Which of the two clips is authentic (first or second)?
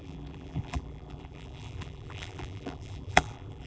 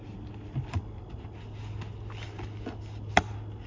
second